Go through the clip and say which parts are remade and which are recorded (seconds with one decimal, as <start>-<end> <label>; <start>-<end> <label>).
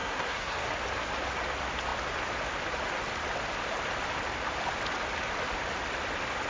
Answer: 0.0-0.7 remade; 0.7-6.5 recorded